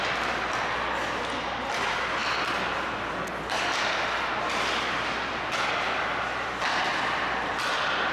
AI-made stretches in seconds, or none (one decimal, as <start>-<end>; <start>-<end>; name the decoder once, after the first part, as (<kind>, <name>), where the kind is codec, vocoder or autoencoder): none